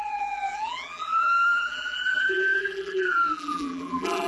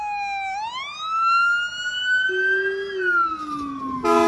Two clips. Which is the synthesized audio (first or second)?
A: first